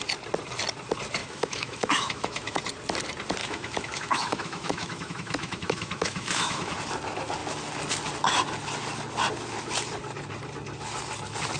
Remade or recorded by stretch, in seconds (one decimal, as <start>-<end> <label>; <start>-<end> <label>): 0.0-1.2 recorded; 1.2-2.6 remade; 2.6-3.4 recorded; 3.4-6.7 remade; 6.7-11.6 recorded